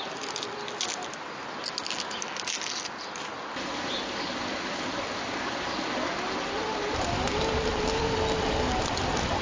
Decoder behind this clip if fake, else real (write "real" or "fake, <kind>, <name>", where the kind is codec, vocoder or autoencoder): real